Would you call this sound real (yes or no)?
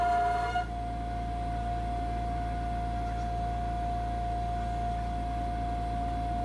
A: yes